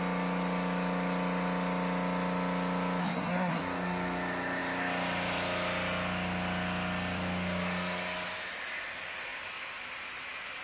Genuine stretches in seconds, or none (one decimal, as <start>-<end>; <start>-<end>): 0.0-3.0; 3.6-10.6